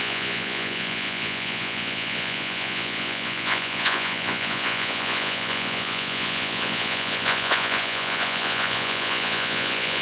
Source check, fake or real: fake